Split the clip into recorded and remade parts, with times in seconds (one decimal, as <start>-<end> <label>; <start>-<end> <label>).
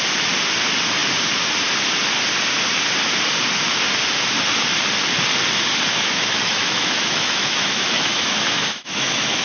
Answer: 0.0-5.9 recorded; 5.9-9.4 remade